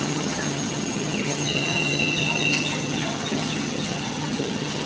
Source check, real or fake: fake